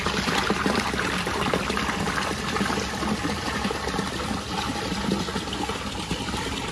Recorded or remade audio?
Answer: remade